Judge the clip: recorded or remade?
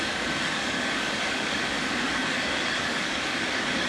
remade